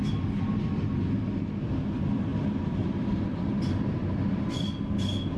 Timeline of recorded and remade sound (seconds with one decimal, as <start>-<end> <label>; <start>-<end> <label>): 0.0-5.4 recorded